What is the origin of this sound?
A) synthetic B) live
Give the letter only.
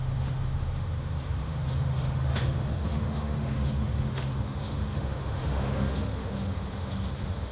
A